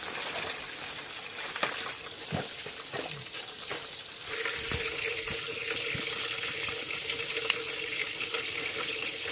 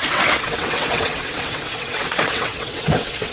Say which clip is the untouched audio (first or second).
first